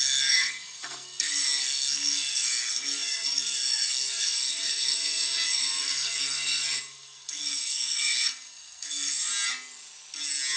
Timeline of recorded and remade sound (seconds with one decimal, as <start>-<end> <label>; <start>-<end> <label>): 0.0-9.3 remade; 9.3-10.6 recorded